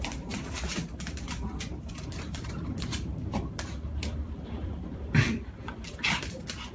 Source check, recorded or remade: remade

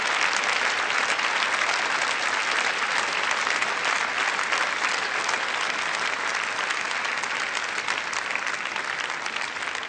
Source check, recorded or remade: recorded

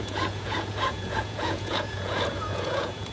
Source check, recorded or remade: remade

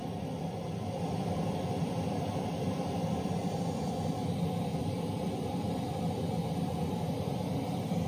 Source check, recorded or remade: remade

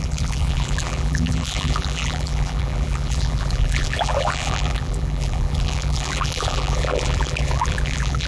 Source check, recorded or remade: remade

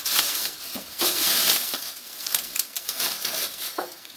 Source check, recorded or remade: remade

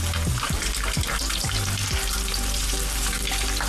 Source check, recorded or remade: remade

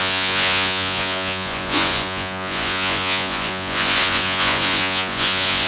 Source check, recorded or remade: remade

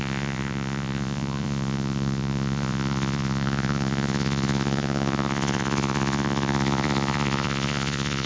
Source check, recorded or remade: remade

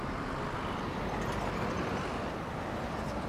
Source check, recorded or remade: recorded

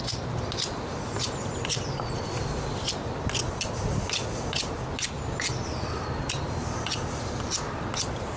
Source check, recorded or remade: recorded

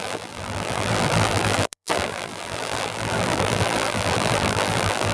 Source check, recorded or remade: remade